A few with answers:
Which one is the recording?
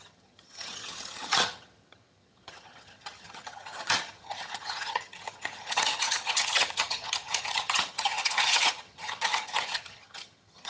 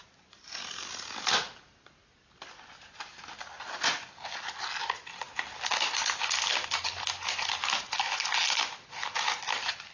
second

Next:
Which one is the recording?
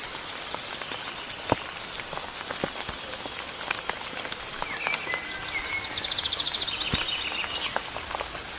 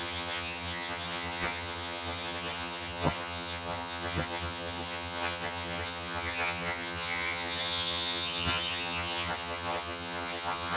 first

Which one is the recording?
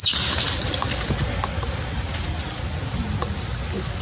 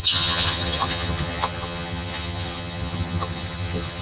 first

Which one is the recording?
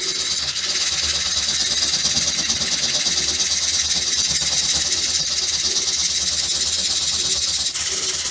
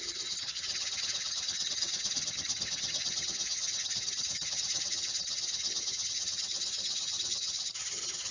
first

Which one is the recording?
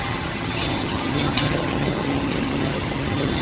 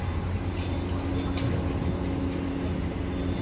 second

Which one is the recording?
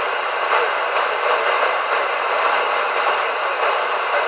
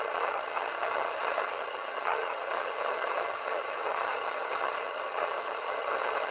first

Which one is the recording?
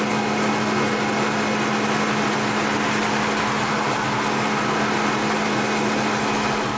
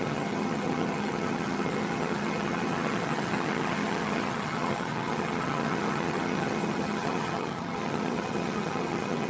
first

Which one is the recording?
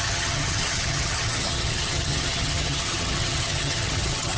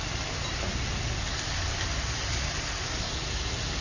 second